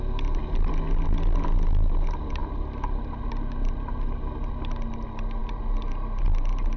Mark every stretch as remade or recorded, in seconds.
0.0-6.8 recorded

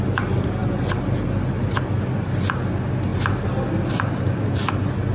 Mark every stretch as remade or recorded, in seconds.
0.0-5.1 recorded

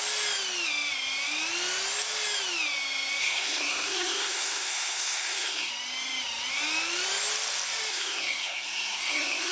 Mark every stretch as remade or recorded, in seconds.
0.0-3.2 recorded; 3.2-5.7 remade; 5.7-7.9 recorded; 7.9-9.5 remade